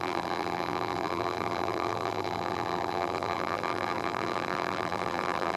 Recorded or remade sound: remade